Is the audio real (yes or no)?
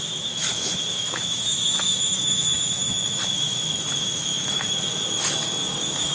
no